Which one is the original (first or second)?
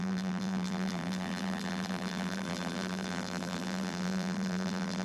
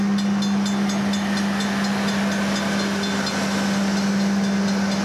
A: second